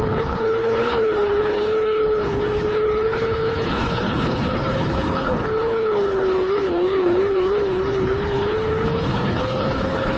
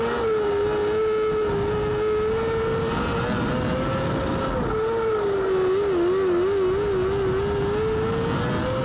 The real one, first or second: second